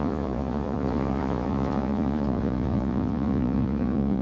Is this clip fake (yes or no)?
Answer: yes